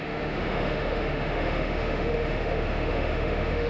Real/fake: fake